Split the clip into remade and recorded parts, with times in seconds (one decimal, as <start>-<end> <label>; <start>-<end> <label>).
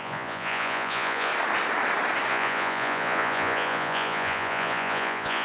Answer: 0.0-1.3 remade; 1.3-2.3 recorded; 2.3-5.4 remade